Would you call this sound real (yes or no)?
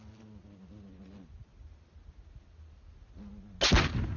yes